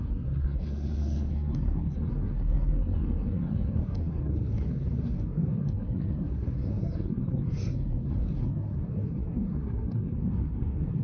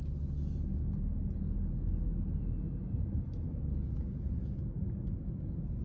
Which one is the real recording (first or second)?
second